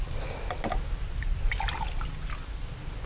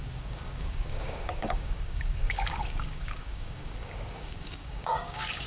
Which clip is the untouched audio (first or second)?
first